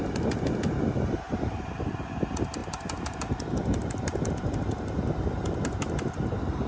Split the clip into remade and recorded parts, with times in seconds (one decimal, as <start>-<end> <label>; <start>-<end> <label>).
0.0-1.9 remade; 1.9-2.6 recorded; 2.6-4.3 remade; 4.3-6.7 recorded